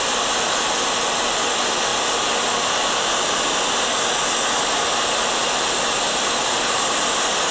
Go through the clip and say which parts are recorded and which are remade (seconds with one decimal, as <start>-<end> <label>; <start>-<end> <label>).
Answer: 0.0-7.5 recorded